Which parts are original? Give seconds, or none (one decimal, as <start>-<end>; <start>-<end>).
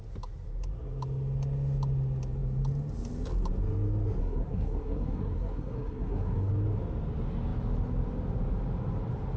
0.0-4.2; 6.5-9.4